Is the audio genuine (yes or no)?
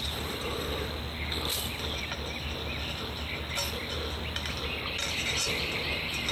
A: yes